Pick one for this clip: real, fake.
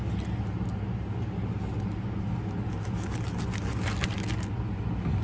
real